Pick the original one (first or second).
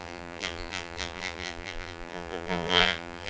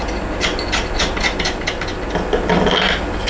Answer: second